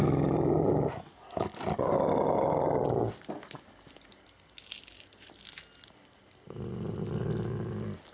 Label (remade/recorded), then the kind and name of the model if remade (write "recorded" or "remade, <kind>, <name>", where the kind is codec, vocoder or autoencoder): recorded